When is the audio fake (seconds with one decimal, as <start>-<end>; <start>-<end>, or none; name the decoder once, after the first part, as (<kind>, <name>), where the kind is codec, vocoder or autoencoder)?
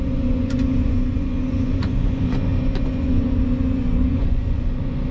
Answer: 0.0-5.1 (vocoder, Vocos)